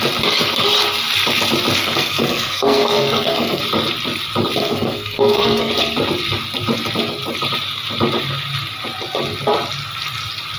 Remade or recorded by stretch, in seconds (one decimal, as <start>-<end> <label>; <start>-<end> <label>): 0.0-1.8 recorded; 1.8-3.6 remade; 3.6-4.6 recorded; 4.6-5.7 remade; 5.7-10.6 recorded